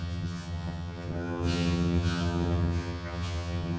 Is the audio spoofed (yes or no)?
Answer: yes